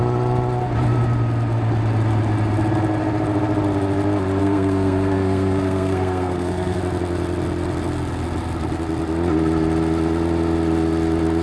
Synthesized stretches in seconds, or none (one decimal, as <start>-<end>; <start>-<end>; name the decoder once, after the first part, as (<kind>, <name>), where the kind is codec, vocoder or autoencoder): 4.4-6.8 (codec, SNAC)